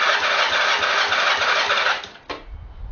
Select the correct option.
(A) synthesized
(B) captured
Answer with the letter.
B